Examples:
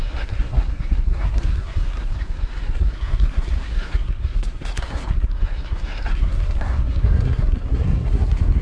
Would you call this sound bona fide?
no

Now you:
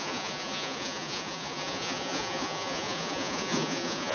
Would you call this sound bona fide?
no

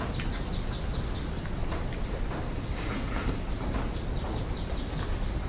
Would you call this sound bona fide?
yes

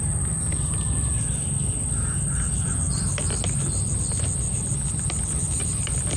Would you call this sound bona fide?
yes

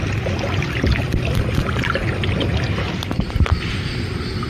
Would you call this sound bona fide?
yes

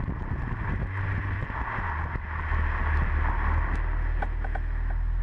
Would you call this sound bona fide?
yes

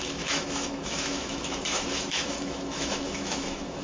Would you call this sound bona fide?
no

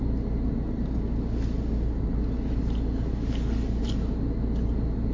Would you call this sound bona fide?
yes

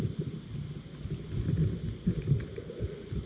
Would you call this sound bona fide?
yes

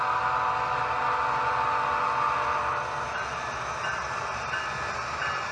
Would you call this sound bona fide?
yes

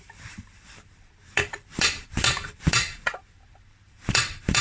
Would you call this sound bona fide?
no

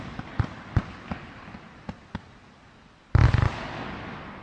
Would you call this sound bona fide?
yes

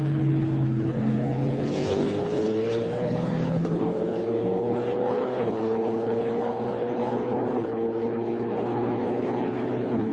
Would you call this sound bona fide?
no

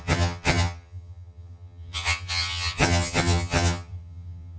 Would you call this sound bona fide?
no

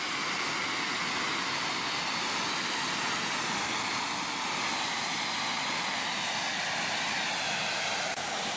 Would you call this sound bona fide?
yes